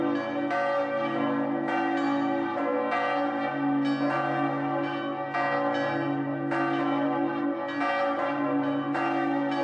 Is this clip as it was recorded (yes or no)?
yes